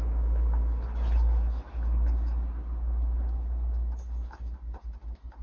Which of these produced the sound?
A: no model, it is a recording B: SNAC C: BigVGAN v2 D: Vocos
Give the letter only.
A